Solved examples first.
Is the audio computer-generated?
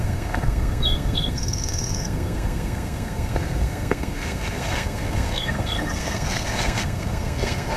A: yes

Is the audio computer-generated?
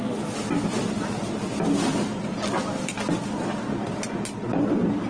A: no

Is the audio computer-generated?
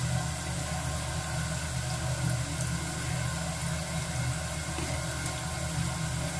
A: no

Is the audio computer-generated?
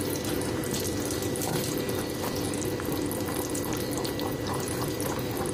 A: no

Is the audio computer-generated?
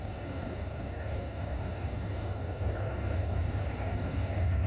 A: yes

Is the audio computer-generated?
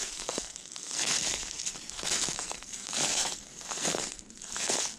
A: yes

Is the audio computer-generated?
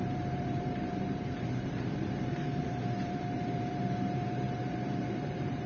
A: yes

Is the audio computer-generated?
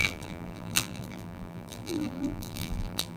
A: yes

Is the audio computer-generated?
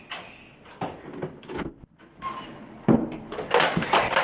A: no